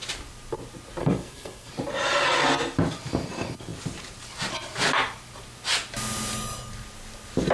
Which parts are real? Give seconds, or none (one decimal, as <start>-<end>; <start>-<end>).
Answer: 0.0-1.0; 1.7-7.5